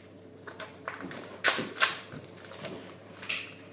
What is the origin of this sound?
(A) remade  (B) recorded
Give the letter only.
A